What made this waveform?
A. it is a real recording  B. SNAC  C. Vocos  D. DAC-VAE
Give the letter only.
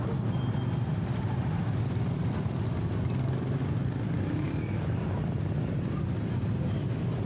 A